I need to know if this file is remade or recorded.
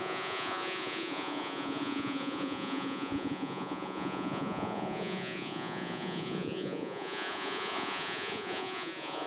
remade